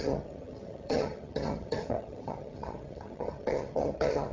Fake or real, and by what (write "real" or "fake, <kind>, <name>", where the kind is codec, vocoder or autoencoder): fake, vocoder, HiFi-GAN